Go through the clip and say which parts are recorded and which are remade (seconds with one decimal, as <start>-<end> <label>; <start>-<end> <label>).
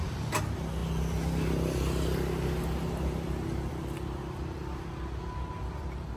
0.0-6.2 recorded